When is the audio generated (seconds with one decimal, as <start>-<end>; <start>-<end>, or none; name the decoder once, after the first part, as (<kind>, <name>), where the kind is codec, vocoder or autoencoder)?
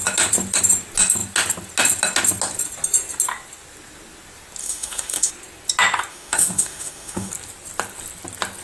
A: 4.6-5.3 (autoencoder, DAC-VAE); 6.1-7.3